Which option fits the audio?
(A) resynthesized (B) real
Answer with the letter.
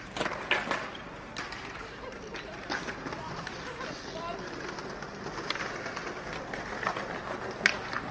B